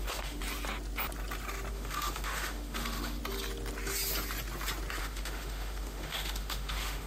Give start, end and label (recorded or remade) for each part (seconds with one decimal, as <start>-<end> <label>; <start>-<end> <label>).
0.0-0.4 remade; 0.4-1.7 recorded; 1.7-3.2 remade; 3.2-5.0 recorded; 5.0-7.1 remade